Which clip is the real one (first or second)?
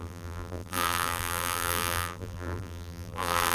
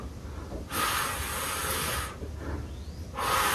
second